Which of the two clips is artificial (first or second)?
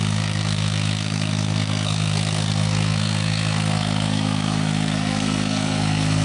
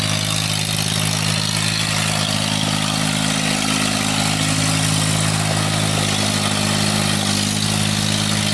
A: first